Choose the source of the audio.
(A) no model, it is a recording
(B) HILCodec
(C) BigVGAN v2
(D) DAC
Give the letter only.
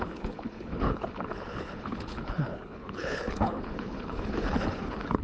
B